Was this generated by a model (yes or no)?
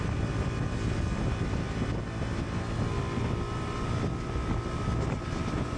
no